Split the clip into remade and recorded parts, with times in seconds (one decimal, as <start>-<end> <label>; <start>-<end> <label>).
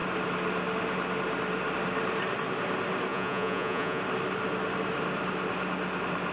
0.0-3.1 recorded; 3.1-4.0 remade; 4.0-6.3 recorded